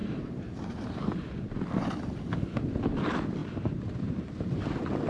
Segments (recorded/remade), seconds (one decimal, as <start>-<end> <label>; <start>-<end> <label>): 0.0-1.0 remade; 1.0-3.4 recorded; 3.4-4.6 remade; 4.6-5.1 recorded